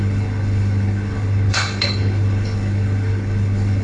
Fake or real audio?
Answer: fake